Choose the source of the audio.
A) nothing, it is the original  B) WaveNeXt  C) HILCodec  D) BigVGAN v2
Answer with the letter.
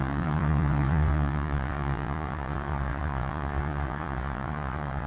B